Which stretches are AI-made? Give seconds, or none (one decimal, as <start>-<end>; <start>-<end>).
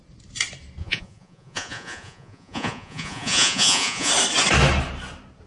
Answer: 0.8-4.1